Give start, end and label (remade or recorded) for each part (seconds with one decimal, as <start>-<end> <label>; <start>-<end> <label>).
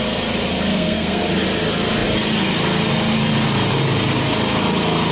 0.0-0.7 recorded; 0.7-1.2 remade; 1.2-5.1 recorded